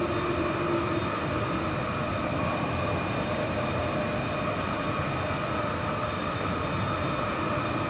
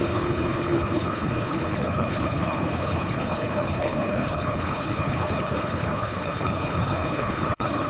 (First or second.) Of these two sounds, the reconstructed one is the second